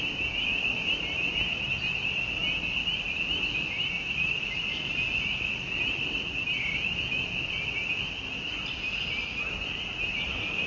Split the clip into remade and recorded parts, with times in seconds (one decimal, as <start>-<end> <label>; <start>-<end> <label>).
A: 0.0-10.7 recorded